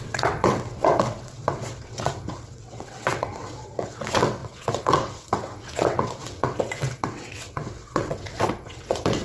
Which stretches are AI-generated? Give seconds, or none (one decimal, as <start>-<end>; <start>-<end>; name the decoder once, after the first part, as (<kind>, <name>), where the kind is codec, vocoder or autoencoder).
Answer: 0.0-9.2 (vocoder, WaveNeXt)